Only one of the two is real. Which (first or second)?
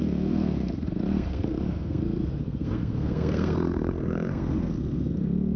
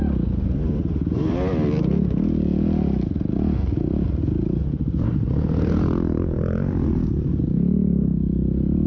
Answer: second